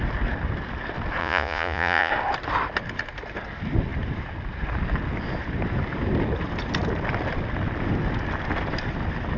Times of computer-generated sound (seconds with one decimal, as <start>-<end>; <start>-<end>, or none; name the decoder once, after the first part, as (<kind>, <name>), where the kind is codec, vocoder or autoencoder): 1.2-2.1 (vocoder, Vocos)